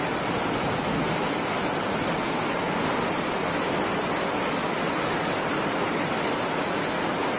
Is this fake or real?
real